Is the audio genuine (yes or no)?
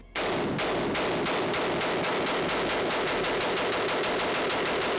yes